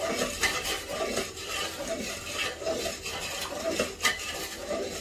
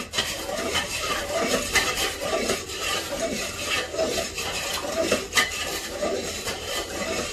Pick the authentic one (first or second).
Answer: first